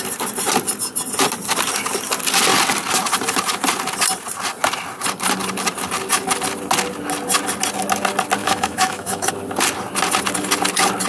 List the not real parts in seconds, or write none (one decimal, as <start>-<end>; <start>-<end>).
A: 8.4-9.3